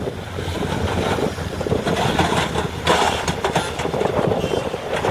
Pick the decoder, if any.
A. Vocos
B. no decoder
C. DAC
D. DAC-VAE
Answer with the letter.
B